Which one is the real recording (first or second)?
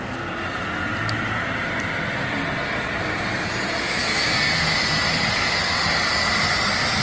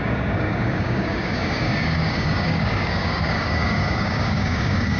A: first